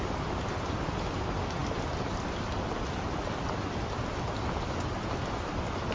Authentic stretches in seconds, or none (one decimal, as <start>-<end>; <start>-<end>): 0.0-5.9

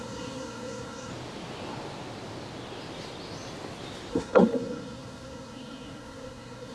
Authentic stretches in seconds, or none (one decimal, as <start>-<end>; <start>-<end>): 1.1-4.1

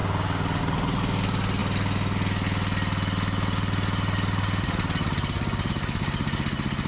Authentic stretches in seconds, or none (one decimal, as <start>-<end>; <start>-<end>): 0.0-6.9

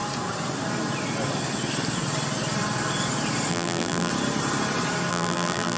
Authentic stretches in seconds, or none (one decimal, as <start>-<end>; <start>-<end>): 0.0-3.5; 4.1-5.1

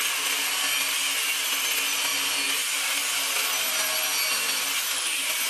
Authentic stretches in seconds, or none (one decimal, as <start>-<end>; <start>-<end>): 0.0-5.5

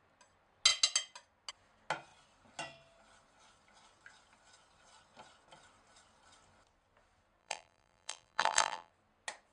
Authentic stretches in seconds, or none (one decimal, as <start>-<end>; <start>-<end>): 0.0-7.4; 8.9-9.5